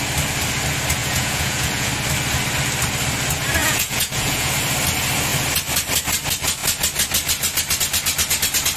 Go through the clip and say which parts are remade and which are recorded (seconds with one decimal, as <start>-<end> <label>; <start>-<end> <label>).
0.0-1.0 recorded; 1.0-1.9 remade; 1.9-3.6 recorded; 3.6-4.5 remade; 4.5-8.8 recorded